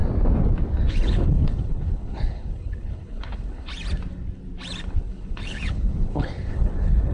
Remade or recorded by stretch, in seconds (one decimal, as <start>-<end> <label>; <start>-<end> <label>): 0.0-0.9 recorded; 0.9-3.7 remade; 3.7-4.8 recorded; 4.8-7.1 remade